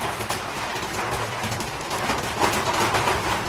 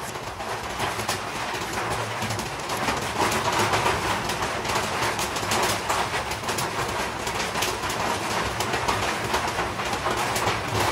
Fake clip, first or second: first